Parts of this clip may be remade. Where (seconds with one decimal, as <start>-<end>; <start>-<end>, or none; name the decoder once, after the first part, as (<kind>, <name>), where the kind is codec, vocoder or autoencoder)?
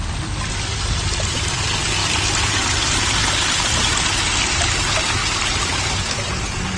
5.2-6.0 (vocoder, BigVGAN v2)